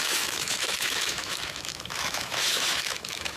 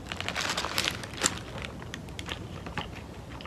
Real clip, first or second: second